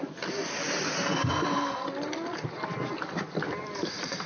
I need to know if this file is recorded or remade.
recorded